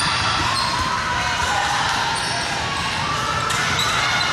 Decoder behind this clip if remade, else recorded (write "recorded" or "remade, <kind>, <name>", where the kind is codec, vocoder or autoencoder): recorded